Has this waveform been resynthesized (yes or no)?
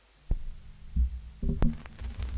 no